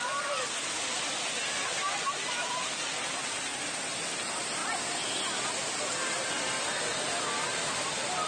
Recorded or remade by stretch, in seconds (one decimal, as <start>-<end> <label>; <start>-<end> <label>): 0.0-8.3 recorded